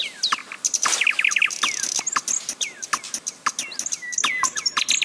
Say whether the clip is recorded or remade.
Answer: recorded